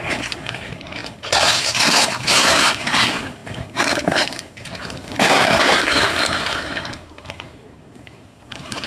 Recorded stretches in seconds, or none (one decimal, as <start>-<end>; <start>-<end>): none